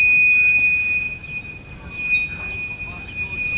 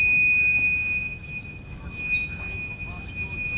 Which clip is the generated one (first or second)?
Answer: second